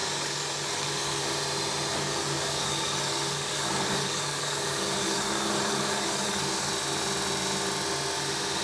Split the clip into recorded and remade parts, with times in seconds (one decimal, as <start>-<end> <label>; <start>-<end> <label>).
0.0-1.2 remade; 1.2-1.9 recorded; 1.9-6.7 remade; 6.7-8.6 recorded